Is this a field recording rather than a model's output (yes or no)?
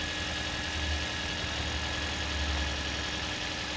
yes